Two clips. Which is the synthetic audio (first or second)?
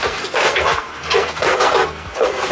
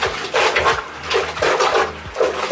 first